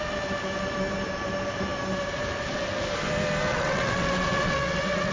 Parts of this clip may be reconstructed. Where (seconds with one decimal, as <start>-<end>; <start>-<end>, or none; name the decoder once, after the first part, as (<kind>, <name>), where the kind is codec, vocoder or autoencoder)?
3.5-5.1 (vocoder, WaveNeXt)